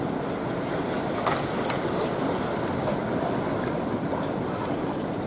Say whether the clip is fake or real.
real